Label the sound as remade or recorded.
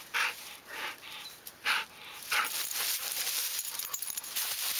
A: remade